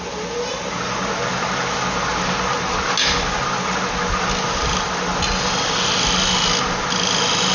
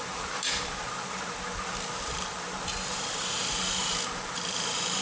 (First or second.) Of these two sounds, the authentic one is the first